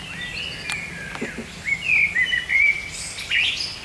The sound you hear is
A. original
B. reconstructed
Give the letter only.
A